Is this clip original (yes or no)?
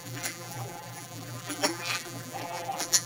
no